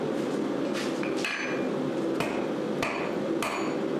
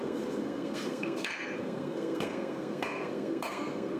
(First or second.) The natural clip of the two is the first